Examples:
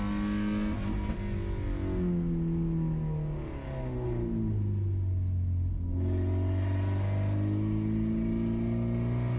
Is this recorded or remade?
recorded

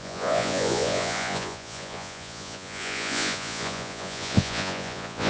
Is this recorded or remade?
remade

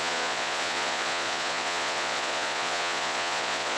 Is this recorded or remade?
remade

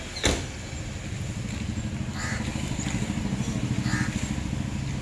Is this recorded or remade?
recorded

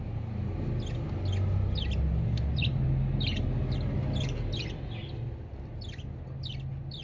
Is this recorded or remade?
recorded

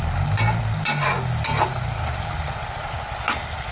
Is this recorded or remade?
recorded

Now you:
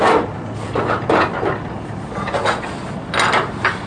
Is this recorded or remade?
recorded